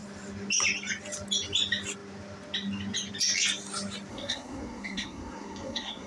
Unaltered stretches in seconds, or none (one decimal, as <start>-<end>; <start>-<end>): 0.0-4.1